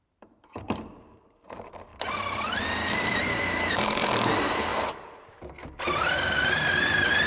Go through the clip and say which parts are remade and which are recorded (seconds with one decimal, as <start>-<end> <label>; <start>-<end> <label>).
0.0-1.9 remade; 1.9-3.2 recorded; 3.2-7.3 remade